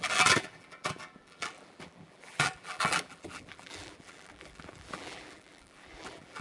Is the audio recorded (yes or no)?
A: no